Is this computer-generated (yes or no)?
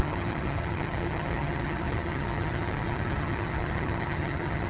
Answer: yes